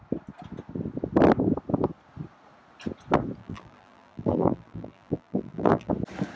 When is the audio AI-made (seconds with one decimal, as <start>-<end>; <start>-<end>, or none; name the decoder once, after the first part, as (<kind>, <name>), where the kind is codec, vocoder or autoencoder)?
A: 3.4-5.9 (vocoder, BigVGAN v2)